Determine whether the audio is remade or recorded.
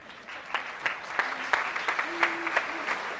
recorded